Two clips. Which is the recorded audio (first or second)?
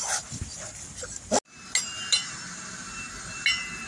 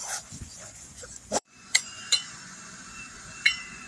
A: first